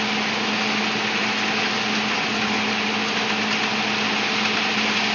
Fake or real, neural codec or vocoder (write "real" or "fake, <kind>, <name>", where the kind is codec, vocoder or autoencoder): real